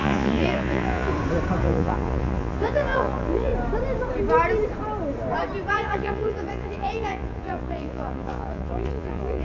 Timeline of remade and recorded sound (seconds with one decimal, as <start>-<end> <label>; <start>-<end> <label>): 0.0-1.1 remade; 1.1-1.6 recorded; 1.6-3.5 remade; 3.5-5.7 recorded; 5.7-9.4 remade